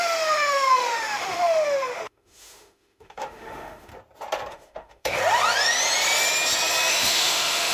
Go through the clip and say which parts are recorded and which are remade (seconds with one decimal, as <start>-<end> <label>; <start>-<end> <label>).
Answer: 0.0-3.9 remade; 3.9-4.5 recorded; 4.5-5.2 remade; 5.2-6.9 recorded; 6.9-7.7 remade